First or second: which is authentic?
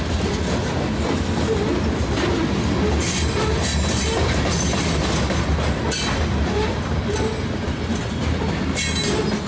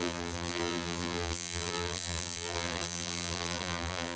first